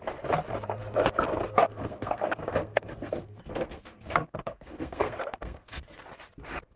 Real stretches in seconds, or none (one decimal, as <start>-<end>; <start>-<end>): 0.0-1.7; 5.8-6.8